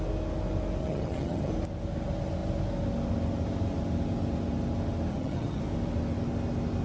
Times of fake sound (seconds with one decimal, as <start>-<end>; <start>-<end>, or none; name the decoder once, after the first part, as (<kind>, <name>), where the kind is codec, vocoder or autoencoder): 0.8-1.5 (vocoder, HiFi-GAN); 5.1-5.6